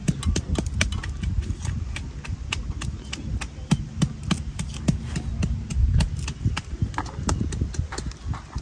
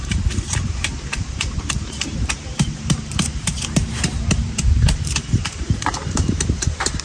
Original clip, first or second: first